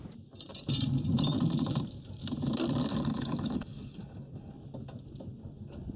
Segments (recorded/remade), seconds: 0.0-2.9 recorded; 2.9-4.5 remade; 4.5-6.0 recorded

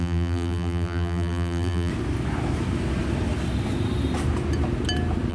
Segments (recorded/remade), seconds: 0.0-1.9 remade; 1.9-5.3 recorded

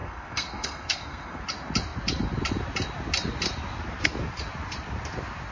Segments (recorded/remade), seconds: 0.0-1.4 remade; 1.4-5.5 recorded

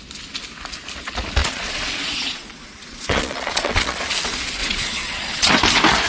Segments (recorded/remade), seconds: 0.0-1.4 recorded; 1.4-4.0 remade; 4.0-4.6 recorded; 4.6-5.5 remade; 5.5-6.1 recorded